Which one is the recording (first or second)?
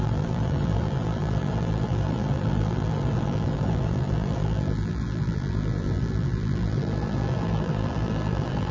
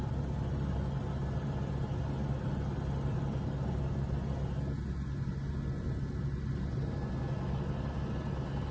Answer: second